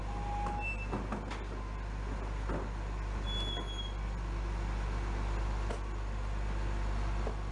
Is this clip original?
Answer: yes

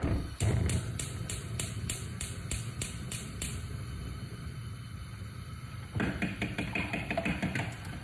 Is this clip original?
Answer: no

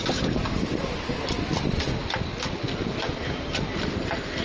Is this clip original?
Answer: yes